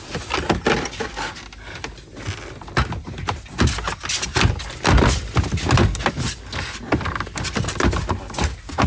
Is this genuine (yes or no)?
yes